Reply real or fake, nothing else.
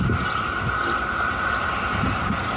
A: real